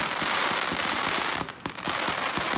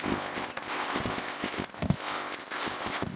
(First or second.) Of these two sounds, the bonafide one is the first